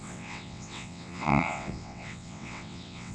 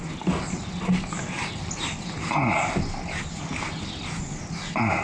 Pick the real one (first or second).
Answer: second